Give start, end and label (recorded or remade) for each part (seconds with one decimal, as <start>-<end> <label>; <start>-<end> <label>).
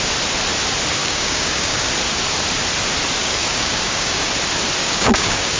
0.0-1.0 recorded; 1.0-1.9 remade; 1.9-3.2 recorded; 3.2-4.3 remade; 4.3-4.8 recorded; 4.8-5.6 remade